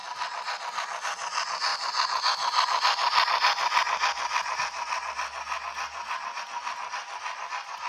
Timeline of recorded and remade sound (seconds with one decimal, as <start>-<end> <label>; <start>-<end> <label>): 0.0-7.9 recorded

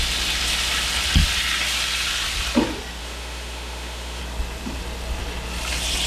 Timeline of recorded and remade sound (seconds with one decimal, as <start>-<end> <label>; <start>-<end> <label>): 0.0-3.0 recorded; 3.0-4.2 remade; 4.2-6.1 recorded